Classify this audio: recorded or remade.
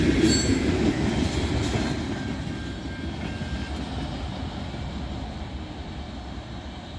recorded